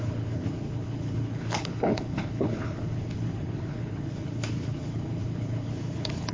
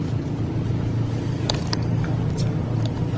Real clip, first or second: second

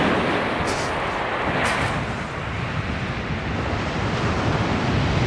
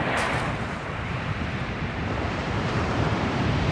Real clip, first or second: first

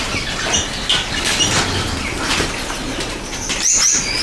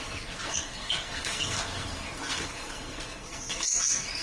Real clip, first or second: first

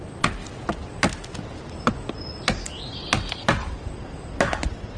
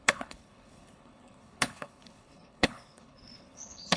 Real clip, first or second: first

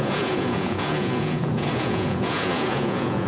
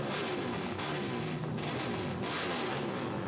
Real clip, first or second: second